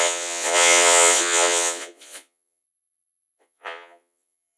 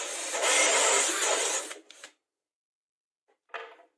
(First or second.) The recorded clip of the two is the second